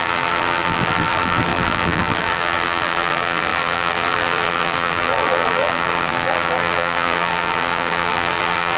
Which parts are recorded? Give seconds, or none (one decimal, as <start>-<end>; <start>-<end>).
none